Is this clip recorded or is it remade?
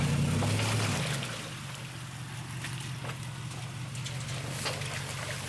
recorded